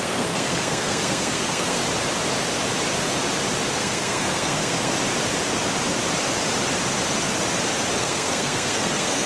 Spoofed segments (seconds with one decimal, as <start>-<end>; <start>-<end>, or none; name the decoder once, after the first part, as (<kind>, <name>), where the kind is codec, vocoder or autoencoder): 0.0-1.8 (codec, SNAC); 3.8-4.9; 8.0-9.3